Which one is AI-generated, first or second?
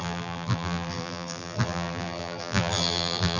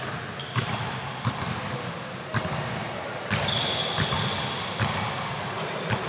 first